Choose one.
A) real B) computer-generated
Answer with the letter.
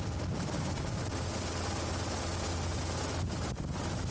A